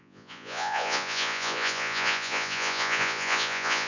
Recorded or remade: remade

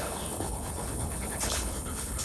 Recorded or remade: remade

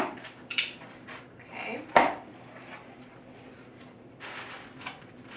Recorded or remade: remade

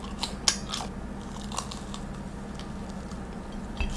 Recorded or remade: recorded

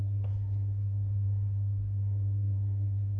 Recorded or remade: remade